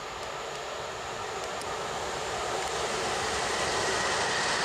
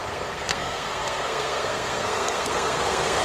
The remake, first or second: second